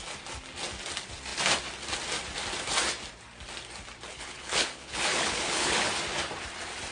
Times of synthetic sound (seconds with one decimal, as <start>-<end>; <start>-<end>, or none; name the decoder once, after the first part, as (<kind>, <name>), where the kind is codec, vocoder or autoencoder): 4.1-5.9 (codec, HILCodec)